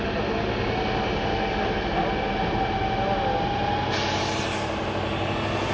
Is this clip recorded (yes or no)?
yes